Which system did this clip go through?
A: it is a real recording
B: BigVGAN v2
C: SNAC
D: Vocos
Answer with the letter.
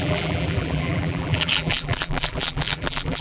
B